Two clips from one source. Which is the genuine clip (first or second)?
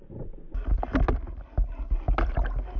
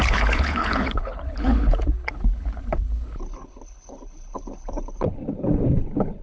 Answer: first